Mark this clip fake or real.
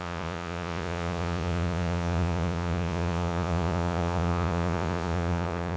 fake